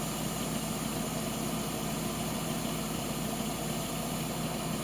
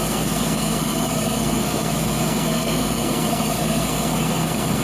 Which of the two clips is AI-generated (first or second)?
second